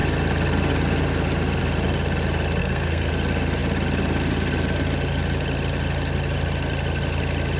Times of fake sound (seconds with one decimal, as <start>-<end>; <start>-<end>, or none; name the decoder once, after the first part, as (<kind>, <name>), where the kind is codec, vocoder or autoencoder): 2.6-3.1 (codec, SNAC)